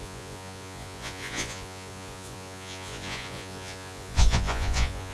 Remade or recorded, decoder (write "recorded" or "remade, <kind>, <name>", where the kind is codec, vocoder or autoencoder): remade, vocoder, Vocos